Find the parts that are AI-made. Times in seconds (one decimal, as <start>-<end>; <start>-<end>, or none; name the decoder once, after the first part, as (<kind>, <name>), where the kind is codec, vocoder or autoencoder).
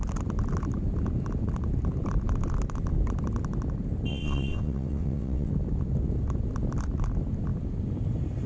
4.1-5.5 (vocoder, WaveNeXt)